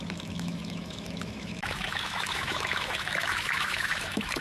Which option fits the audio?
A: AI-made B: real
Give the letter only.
A